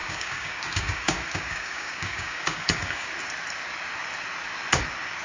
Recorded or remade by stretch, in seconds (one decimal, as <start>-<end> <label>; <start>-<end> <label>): 0.0-3.1 remade; 3.1-5.2 recorded